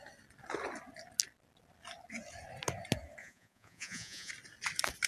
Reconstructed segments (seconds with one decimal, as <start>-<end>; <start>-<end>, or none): 3.2-4.3